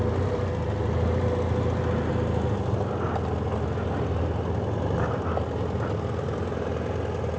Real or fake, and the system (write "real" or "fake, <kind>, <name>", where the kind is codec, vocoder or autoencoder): real